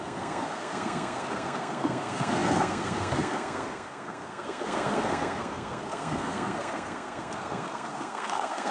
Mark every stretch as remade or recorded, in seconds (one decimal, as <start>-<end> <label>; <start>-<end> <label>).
0.0-8.7 remade